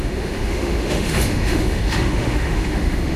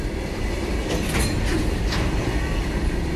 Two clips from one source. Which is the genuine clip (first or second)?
second